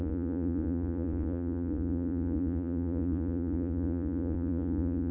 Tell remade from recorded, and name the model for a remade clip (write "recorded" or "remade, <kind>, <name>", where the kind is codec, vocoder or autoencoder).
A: remade, vocoder, Vocos